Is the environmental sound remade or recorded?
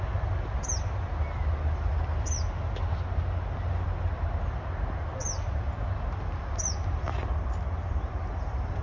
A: recorded